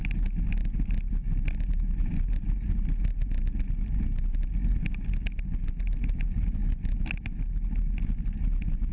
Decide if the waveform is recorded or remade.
recorded